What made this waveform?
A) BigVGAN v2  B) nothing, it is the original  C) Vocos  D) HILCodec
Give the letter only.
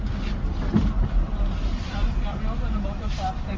B